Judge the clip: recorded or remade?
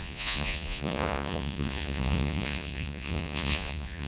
remade